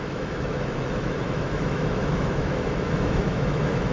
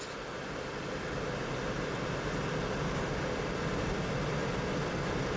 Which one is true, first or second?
second